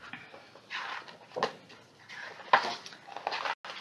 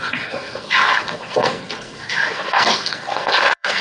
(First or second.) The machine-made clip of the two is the second